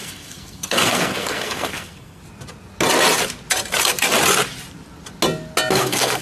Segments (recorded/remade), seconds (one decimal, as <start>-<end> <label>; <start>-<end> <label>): 0.0-2.2 remade; 2.2-5.7 recorded; 5.7-6.2 remade